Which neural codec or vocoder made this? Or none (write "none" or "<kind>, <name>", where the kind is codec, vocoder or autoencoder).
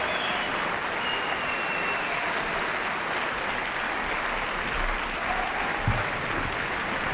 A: none